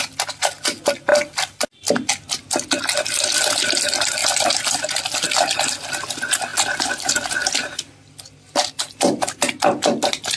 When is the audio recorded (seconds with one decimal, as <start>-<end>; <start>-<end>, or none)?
0.0-10.4